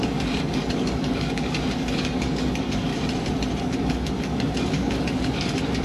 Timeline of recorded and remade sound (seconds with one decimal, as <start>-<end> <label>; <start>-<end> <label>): 0.0-2.9 remade; 2.9-3.6 recorded; 3.6-5.8 remade